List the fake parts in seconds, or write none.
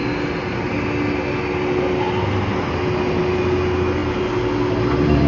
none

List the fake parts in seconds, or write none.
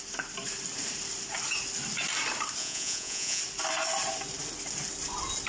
2.6-3.4 (vocoder, Vocos)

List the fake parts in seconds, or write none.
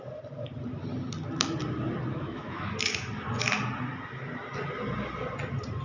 2.1-2.7 (autoencoder, DAC-VAE)